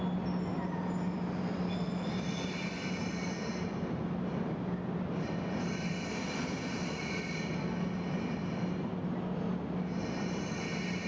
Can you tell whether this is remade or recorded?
recorded